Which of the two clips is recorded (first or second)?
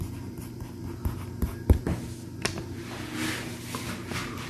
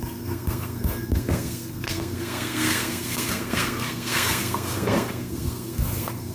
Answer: first